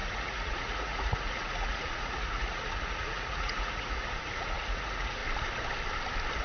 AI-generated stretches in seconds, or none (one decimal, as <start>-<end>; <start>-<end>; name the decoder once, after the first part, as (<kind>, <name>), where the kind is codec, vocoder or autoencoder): 0.0-5.2 (vocoder, Vocos)